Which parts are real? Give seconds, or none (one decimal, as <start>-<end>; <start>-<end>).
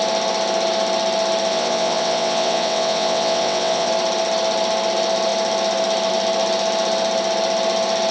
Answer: 0.0-1.5; 3.9-8.1